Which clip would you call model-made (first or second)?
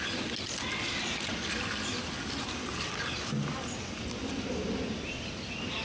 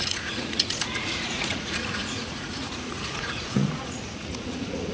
second